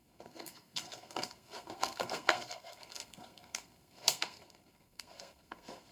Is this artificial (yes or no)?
yes